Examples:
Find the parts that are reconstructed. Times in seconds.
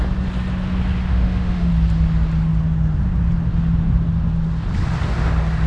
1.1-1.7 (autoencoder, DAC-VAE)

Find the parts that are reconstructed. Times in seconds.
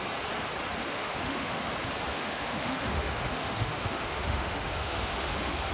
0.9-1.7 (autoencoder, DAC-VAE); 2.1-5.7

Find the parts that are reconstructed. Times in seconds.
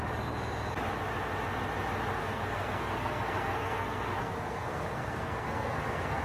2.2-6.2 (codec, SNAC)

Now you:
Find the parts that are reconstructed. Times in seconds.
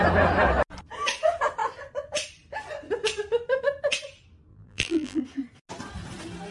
4.5-5.2 (vocoder, BigVGAN v2)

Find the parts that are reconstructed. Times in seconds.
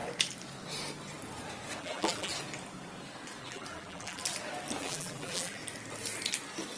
1.8-2.3 (vocoder, BigVGAN v2); 3.4-4.2; 4.8-5.6